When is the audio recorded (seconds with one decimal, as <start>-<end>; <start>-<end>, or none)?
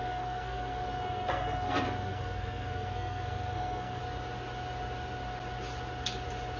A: 4.0-6.6